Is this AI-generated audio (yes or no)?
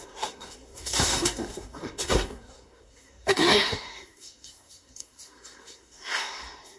yes